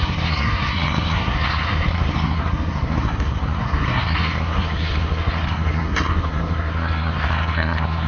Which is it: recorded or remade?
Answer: remade